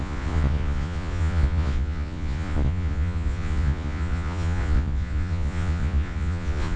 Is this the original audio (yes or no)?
no